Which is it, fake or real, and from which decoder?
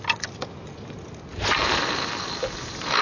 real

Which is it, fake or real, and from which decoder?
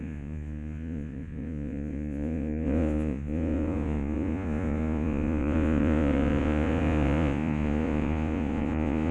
fake, vocoder, Vocos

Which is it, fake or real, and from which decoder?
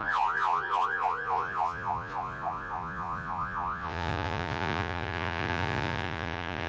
fake, vocoder, Vocos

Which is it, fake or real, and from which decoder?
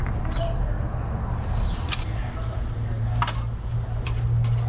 real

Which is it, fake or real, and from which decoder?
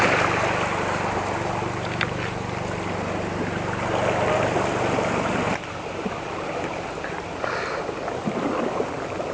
real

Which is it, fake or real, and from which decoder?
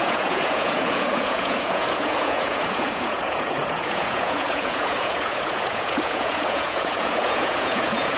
fake, vocoder, Vocos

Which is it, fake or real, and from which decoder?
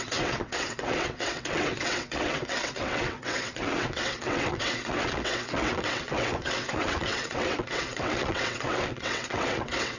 fake, vocoder, WaveNeXt